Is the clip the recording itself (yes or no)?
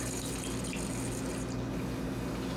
yes